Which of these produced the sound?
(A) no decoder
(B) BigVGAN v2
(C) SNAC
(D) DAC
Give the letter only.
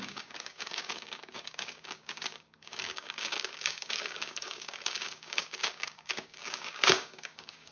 D